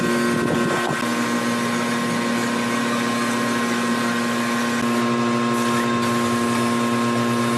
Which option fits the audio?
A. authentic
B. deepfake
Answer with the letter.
A